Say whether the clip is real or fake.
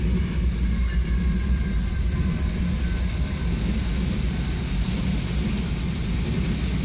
real